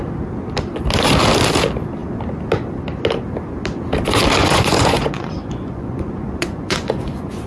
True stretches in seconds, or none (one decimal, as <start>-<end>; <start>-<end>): 0.0-4.4

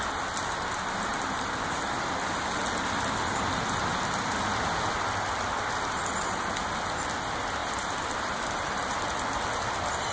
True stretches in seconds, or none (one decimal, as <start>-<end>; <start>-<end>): 0.0-1.1; 2.0-7.6; 9.0-10.1

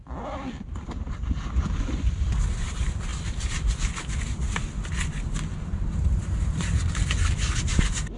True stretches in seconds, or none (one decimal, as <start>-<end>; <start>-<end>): 0.0-8.2

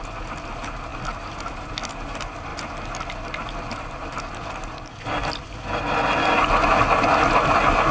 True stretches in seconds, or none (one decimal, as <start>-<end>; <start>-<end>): 0.0-7.9

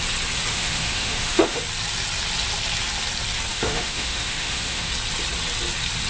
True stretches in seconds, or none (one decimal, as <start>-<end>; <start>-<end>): 0.0-0.5; 1.6-3.5; 4.9-6.1

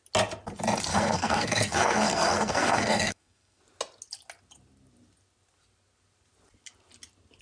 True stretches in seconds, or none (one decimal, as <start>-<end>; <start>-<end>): 0.0-0.9; 3.6-7.4

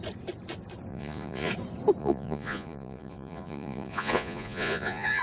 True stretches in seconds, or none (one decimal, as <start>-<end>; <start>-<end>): 0.0-0.9; 1.5-2.0